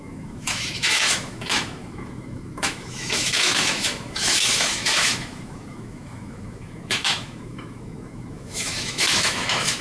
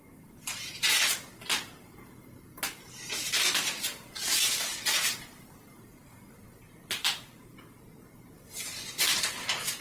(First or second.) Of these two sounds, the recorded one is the second